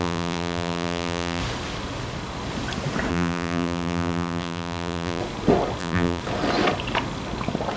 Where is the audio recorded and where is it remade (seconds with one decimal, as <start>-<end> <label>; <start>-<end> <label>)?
0.0-1.4 remade; 1.4-3.1 recorded; 3.1-5.2 remade; 5.2-5.8 recorded; 5.8-6.2 remade; 6.2-7.8 recorded